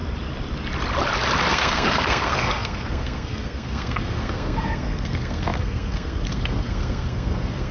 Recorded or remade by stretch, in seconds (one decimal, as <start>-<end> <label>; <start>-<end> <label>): 0.0-1.5 recorded; 1.5-7.7 remade